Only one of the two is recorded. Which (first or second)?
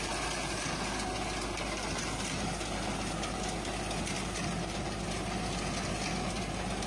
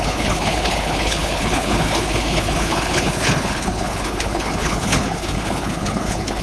first